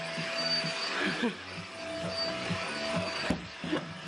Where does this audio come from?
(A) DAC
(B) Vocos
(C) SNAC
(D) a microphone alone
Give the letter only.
A